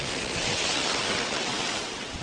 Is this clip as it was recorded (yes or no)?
no